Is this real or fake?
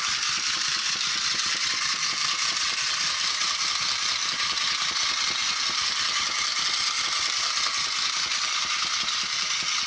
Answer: real